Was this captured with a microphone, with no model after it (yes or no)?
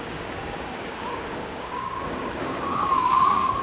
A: no